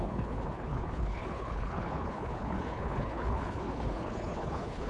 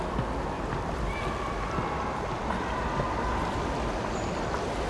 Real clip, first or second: second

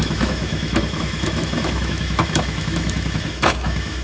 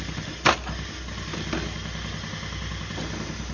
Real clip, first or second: second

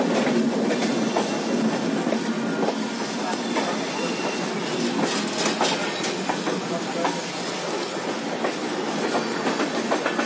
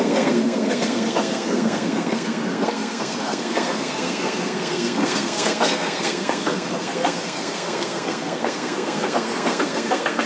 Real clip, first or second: first